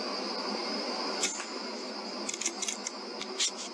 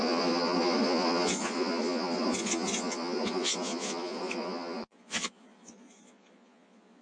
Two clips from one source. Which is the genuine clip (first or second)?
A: first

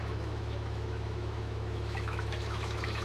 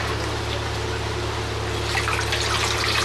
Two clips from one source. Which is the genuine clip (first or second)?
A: second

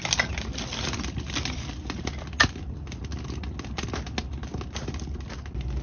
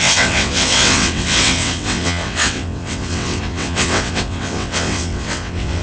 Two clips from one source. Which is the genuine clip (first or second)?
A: first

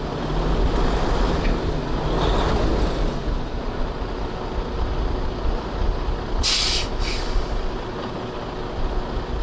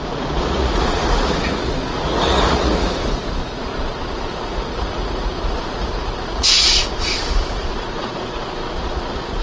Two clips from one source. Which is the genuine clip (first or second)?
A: first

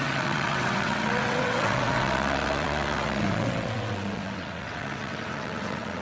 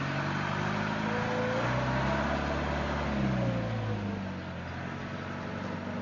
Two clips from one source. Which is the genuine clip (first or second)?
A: second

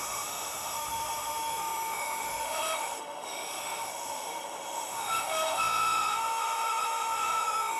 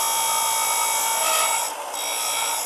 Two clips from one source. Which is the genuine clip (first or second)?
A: second